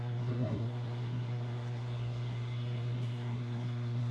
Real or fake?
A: fake